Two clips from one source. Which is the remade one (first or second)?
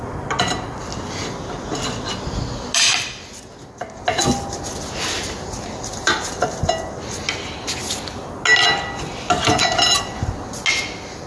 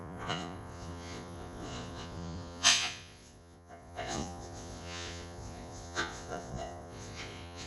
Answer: second